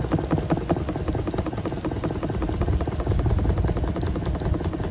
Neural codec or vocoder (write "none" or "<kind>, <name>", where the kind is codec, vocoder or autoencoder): none